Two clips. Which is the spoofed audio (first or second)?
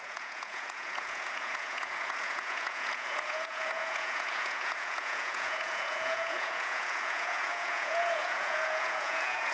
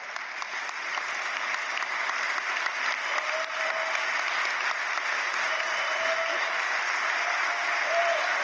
first